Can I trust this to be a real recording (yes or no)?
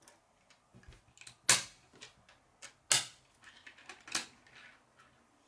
yes